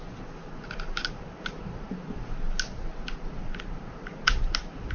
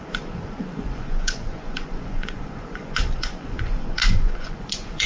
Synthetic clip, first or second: second